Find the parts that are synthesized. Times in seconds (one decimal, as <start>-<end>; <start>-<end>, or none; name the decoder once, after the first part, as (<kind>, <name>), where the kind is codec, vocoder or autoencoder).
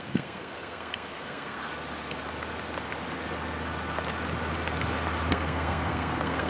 0.0-1.6 (codec, SNAC); 5.3-6.5